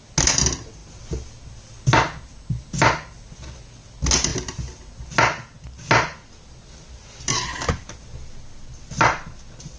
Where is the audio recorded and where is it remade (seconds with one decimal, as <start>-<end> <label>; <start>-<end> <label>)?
0.0-9.8 recorded